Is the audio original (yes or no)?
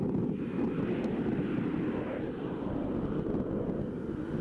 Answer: yes